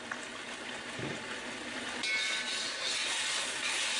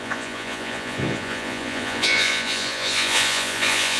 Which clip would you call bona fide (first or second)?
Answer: first